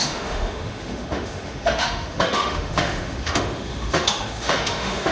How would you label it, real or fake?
fake